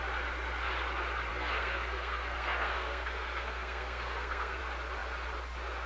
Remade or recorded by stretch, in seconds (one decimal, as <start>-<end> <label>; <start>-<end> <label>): 0.0-1.3 recorded; 1.3-4.6 remade; 4.6-5.9 recorded